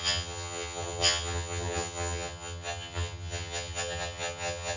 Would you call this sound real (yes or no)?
no